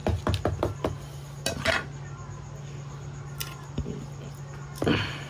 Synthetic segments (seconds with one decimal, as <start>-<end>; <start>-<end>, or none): none